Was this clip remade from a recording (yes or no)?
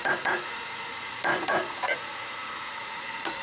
yes